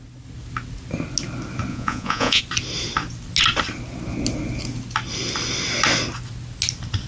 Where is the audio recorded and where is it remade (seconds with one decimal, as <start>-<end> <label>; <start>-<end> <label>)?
0.0-1.7 recorded; 1.7-2.4 remade; 2.4-7.1 recorded